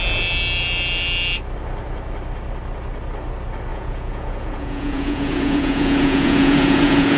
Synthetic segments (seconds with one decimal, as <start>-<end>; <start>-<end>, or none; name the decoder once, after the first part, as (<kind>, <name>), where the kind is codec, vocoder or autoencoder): 3.7-7.2 (vocoder, Vocos)